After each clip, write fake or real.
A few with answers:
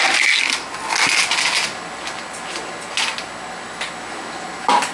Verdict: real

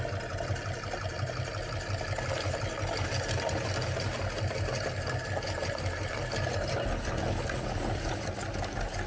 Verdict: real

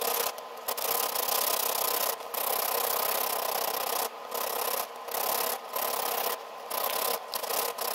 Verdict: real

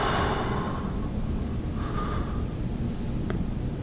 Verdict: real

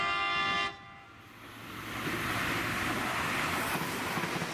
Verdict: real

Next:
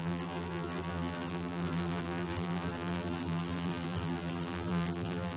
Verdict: fake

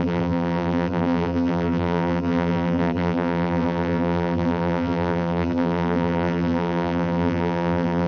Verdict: fake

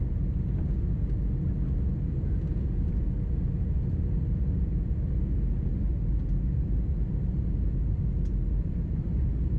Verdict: real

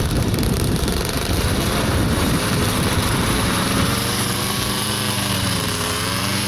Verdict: fake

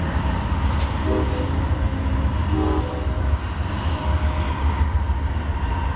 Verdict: real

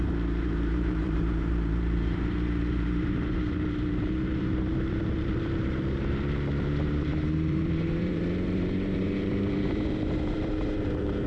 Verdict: fake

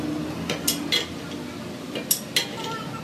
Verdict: real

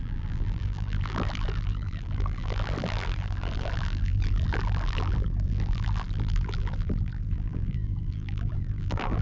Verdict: fake